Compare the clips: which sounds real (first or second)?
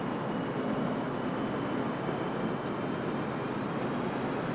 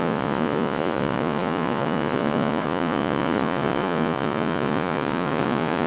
first